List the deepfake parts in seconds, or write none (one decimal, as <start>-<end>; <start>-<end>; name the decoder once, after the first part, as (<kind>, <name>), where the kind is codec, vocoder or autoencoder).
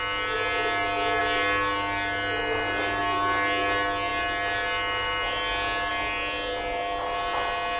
none